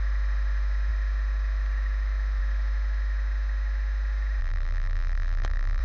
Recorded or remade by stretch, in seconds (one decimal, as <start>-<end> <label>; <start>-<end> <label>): 0.0-4.4 recorded; 4.4-5.8 remade